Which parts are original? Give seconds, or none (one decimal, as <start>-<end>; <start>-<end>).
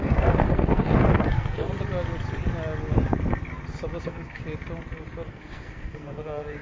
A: 1.7-4.0; 4.4-5.3